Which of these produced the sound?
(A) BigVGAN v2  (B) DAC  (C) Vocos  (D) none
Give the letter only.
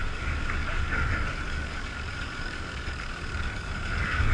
B